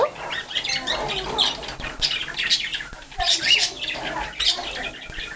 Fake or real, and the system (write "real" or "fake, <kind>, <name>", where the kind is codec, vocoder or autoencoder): real